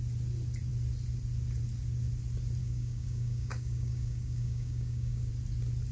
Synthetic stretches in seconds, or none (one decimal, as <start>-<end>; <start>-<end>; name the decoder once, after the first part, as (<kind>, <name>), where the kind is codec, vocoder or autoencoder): 2.6-5.3 (codec, DAC)